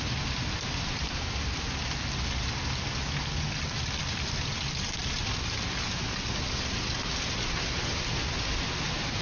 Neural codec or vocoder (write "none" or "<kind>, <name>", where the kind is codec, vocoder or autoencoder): none